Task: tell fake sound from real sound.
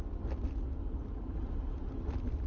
real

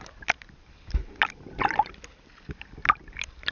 real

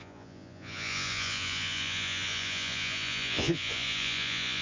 fake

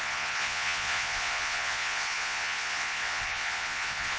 fake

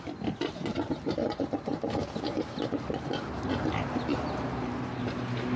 real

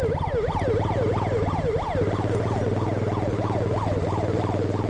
real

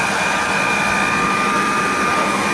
real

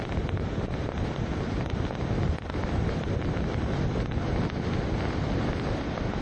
real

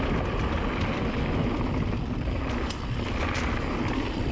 real